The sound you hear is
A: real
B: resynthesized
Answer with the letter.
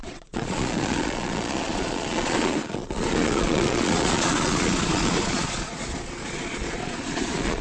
B